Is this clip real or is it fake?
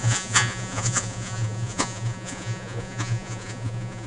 fake